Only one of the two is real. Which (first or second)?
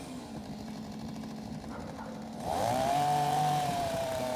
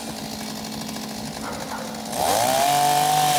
second